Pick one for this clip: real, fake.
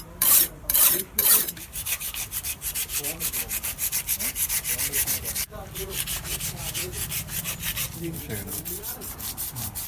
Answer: fake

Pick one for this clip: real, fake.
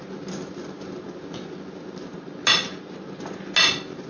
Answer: real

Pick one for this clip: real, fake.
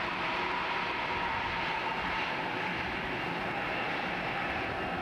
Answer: real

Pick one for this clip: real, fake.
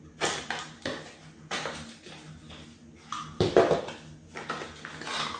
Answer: real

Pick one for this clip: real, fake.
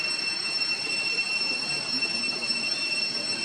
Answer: real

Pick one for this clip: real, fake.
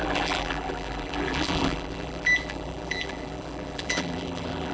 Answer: fake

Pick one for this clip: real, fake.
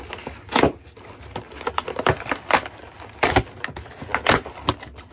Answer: real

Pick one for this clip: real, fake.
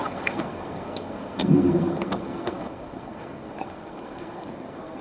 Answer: fake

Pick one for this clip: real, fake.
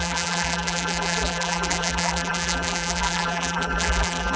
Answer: fake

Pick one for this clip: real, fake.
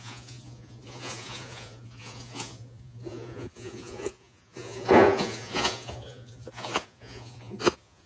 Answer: fake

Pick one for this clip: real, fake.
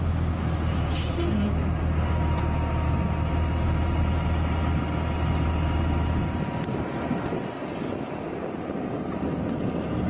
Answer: real